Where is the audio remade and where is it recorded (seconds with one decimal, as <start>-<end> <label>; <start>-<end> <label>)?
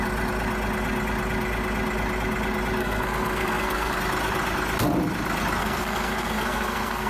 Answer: 0.0-2.8 recorded; 2.8-4.0 remade; 4.0-5.6 recorded; 5.6-7.1 remade